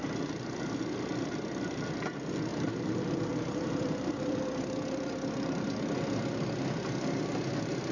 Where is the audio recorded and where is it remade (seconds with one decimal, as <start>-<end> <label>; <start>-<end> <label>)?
0.0-2.5 recorded; 2.5-4.4 remade; 4.4-7.9 recorded